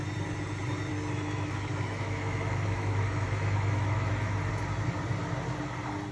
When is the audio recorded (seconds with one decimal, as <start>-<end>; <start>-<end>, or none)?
0.0-0.9; 4.5-6.1